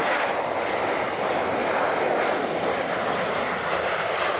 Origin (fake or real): real